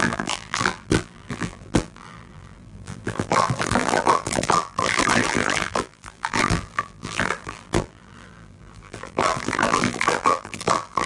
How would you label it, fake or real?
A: fake